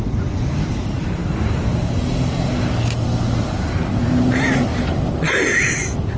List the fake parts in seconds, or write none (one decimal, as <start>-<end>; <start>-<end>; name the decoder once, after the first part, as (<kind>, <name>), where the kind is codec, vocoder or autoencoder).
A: 0.0-1.2 (vocoder, BigVGAN v2); 4.1-4.7